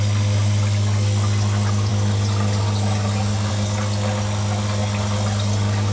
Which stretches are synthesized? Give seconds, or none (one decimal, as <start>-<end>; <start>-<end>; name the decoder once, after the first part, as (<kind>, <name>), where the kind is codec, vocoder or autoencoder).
none